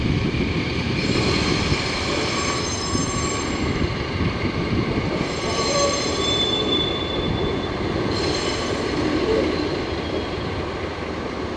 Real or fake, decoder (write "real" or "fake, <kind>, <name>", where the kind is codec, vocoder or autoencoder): fake, vocoder, BigVGAN v2